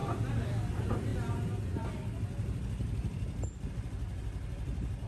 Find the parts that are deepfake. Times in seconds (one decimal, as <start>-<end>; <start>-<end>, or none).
0.0-1.1; 3.7-5.1